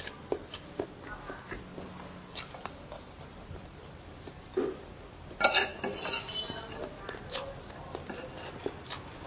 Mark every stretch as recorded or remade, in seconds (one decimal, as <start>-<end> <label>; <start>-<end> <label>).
0.0-9.3 recorded